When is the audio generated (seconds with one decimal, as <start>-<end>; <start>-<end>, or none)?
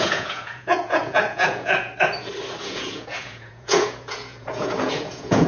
0.0-1.9; 2.6-5.5